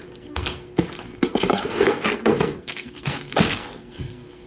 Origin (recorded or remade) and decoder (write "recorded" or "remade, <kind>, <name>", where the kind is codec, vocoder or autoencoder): remade, codec, SNAC